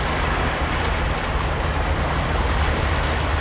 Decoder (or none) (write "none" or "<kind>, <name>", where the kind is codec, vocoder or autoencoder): none